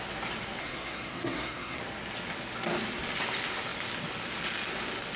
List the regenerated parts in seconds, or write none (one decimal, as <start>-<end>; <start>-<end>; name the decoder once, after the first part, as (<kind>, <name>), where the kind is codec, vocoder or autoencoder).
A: 0.6-1.8 (codec, SNAC)